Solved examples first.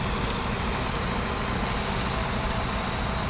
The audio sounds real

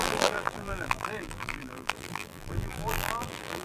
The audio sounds fake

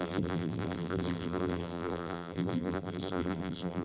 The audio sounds fake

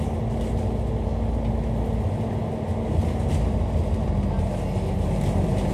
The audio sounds real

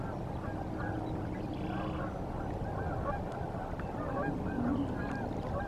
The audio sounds real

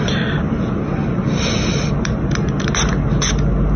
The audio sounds real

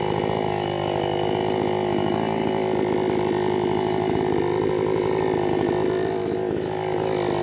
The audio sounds real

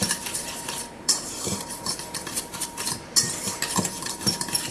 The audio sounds fake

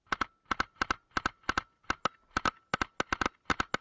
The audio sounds real